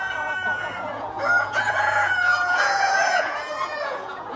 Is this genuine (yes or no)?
no